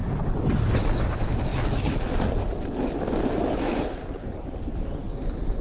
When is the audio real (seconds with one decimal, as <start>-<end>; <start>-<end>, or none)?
0.0-5.6